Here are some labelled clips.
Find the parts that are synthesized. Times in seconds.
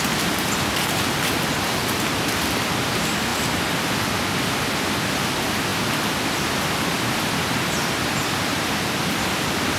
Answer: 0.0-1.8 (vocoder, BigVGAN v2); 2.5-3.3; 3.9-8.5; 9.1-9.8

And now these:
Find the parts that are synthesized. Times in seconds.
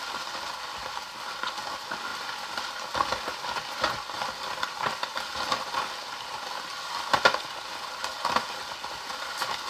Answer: none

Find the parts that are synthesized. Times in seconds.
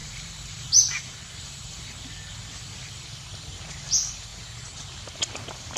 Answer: 0.0-1.9 (vocoder, BigVGAN v2)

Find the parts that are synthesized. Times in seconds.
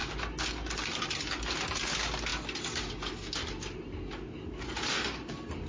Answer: none